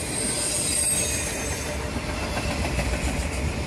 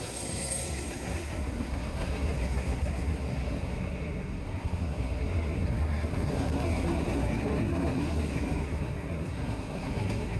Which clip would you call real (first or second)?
first